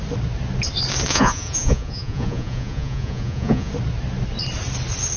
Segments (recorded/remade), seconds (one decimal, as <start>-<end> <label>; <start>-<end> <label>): 0.0-1.1 recorded; 1.1-3.7 remade; 3.7-5.2 recorded